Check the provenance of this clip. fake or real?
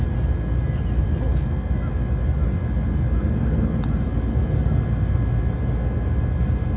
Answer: real